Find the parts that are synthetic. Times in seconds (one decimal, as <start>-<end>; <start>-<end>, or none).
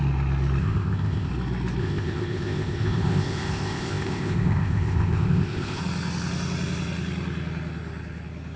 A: 0.6-1.3; 1.8-5.8